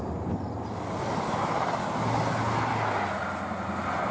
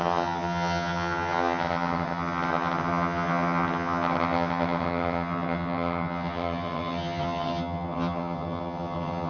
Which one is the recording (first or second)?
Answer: first